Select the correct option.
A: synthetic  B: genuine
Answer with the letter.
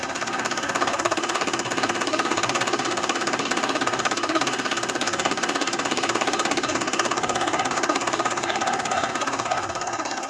A